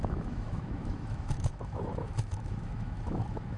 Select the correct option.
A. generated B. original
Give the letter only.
A